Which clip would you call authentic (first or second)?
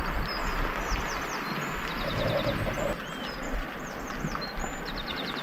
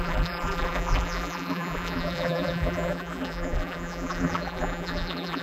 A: first